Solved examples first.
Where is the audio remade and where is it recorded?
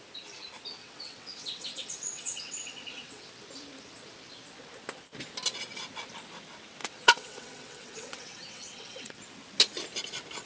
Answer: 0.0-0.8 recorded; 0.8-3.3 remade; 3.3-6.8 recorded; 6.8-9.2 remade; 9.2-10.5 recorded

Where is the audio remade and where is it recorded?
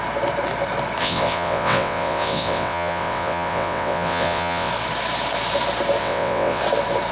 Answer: 0.0-1.0 recorded; 1.0-4.7 remade; 4.7-6.0 recorded; 6.0-6.6 remade; 6.6-7.1 recorded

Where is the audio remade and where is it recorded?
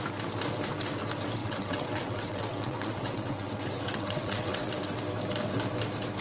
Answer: 0.0-1.4 recorded; 1.4-4.7 remade; 4.7-6.2 recorded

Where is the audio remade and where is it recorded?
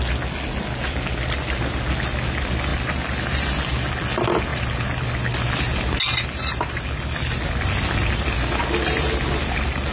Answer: 0.0-9.9 recorded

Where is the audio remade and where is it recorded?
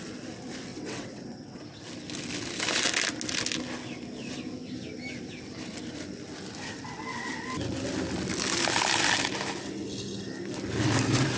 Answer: 0.0-0.7 recorded; 0.7-1.6 remade; 1.6-11.4 recorded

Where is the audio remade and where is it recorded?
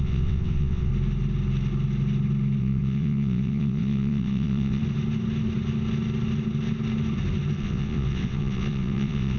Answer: 0.0-0.9 remade; 0.9-2.6 recorded; 2.6-4.8 remade; 4.8-7.6 recorded; 7.6-9.4 remade